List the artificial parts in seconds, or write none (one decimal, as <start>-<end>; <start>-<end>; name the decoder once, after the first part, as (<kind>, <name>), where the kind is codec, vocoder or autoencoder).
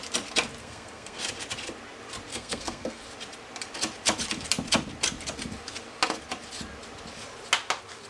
0.6-1.2 (codec, SNAC); 2.3-3.0